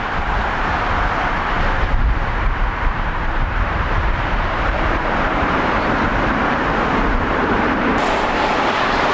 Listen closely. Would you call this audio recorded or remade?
remade